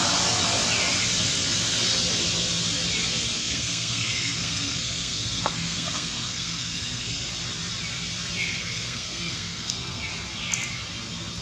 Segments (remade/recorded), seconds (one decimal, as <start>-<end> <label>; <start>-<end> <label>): 0.0-3.4 recorded; 3.4-7.3 remade; 7.3-8.6 recorded; 8.6-10.1 remade; 10.1-11.4 recorded